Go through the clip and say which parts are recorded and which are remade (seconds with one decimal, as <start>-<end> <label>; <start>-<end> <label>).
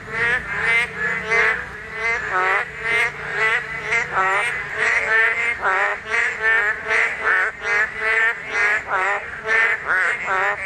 0.0-3.3 recorded; 3.3-5.0 remade; 5.0-8.7 recorded; 8.7-10.2 remade; 10.2-10.7 recorded